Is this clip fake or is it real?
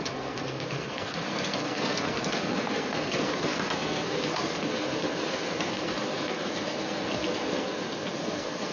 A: fake